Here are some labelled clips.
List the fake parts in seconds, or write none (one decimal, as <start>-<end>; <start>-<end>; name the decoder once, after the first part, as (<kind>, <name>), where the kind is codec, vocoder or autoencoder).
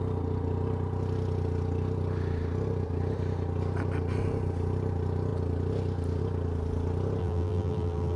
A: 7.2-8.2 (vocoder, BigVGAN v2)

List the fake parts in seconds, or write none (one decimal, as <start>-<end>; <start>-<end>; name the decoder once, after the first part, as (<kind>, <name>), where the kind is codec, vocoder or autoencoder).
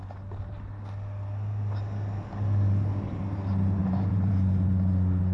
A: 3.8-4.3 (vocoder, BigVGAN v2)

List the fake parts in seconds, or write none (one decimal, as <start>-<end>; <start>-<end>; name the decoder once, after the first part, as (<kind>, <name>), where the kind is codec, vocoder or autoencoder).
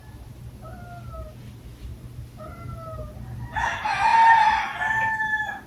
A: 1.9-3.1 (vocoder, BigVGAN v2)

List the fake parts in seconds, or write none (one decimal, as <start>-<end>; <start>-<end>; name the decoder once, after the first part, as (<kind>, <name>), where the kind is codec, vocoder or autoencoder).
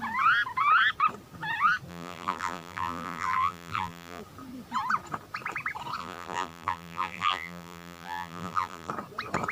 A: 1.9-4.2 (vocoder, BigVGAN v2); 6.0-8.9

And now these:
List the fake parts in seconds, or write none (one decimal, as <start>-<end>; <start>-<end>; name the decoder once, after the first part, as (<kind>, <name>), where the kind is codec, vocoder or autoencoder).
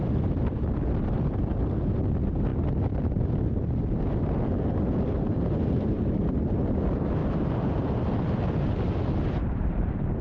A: 7.2-7.9 (vocoder, BigVGAN v2); 9.4-10.2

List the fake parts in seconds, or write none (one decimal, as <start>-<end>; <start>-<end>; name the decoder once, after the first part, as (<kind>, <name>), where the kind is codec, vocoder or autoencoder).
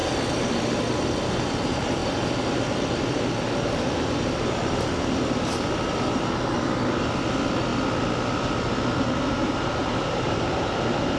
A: 9.3-10.7 (vocoder, BigVGAN v2)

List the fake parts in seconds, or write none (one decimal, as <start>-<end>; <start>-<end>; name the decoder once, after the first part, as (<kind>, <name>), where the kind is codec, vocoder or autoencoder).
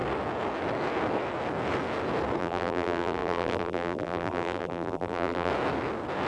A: 2.4-5.5 (vocoder, BigVGAN v2)